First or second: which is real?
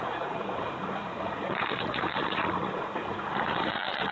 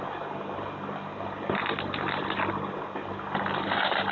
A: second